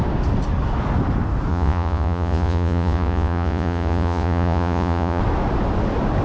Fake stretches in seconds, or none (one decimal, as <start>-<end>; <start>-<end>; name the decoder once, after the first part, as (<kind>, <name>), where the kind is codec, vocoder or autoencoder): 1.5-5.2 (vocoder, Vocos)